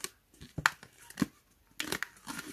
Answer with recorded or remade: recorded